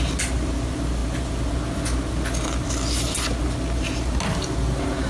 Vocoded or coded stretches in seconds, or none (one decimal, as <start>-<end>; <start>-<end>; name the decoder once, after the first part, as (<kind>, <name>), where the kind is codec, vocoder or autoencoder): none